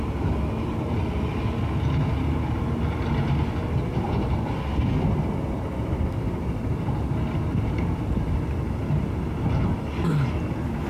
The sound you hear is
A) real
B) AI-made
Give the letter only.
A